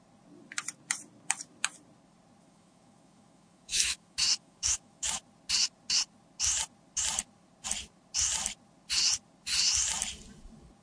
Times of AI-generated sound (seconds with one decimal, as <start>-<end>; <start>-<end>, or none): 2.4-5.2